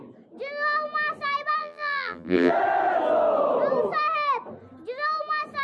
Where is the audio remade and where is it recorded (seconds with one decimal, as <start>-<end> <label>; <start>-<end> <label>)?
0.0-1.6 recorded; 1.6-2.5 remade; 2.5-5.6 recorded